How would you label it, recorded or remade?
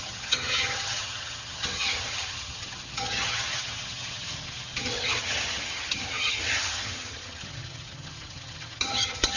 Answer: remade